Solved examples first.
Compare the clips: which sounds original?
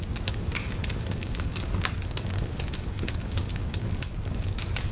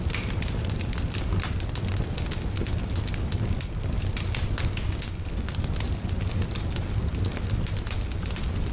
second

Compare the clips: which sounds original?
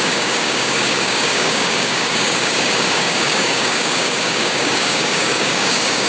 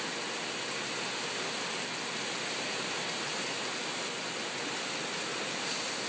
second